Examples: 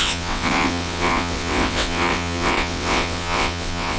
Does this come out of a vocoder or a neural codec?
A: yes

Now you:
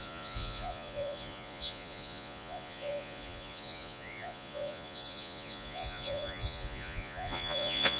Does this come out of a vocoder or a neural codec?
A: yes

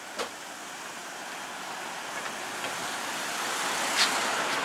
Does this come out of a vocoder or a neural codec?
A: no